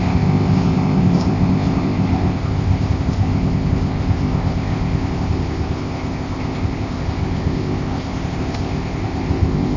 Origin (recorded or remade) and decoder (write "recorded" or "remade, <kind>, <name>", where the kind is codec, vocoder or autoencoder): remade, codec, ZipCodec